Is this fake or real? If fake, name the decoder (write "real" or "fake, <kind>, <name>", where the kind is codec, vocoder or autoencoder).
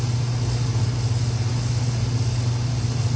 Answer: real